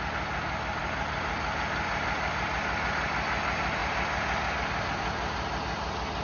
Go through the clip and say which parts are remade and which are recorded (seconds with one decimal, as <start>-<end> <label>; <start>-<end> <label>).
0.0-0.8 recorded; 0.8-2.5 remade; 2.5-6.2 recorded